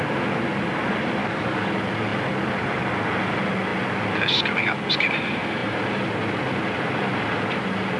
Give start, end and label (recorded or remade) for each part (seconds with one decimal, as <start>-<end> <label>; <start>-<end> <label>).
0.0-1.2 recorded; 1.2-1.7 remade; 1.7-8.0 recorded